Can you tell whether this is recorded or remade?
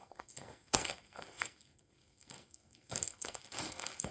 remade